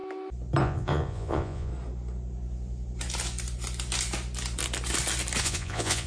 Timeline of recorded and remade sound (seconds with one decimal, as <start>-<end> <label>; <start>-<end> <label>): 0.0-0.6 recorded; 0.6-1.7 remade; 1.7-5.4 recorded; 5.4-6.1 remade